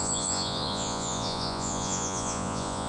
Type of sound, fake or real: fake